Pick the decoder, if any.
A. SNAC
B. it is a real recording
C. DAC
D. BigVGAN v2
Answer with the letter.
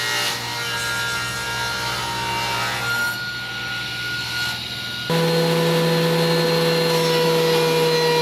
B